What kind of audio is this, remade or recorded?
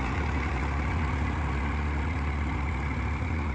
remade